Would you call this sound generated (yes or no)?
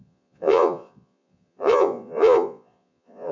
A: yes